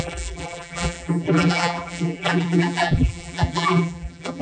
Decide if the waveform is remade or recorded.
remade